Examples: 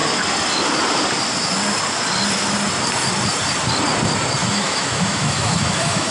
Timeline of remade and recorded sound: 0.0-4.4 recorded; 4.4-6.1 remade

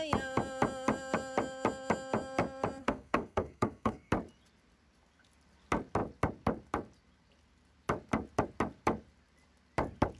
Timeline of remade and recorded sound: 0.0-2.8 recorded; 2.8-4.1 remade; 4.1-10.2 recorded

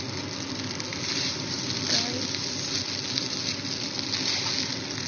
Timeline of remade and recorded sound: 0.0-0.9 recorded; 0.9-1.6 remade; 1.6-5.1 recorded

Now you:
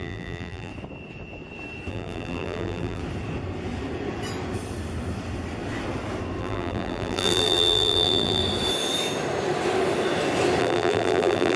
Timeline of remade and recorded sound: 0.0-0.7 remade; 0.7-1.9 recorded; 1.9-3.0 remade; 3.0-6.4 recorded; 6.4-8.4 remade; 8.4-10.6 recorded; 10.6-11.6 remade

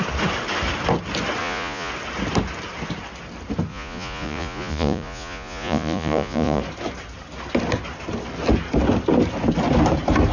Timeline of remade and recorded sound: 0.0-1.4 recorded; 1.4-1.9 remade; 1.9-3.7 recorded; 3.7-6.6 remade; 6.6-10.3 recorded